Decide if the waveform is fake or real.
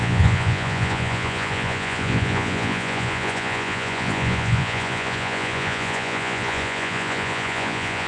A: fake